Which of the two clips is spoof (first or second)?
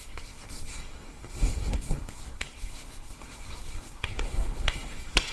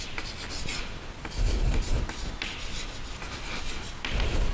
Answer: first